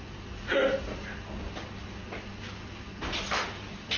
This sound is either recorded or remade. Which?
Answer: recorded